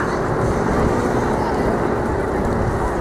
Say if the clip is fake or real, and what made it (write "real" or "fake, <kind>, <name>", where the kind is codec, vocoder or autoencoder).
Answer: real